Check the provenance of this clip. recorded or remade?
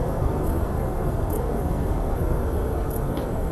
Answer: remade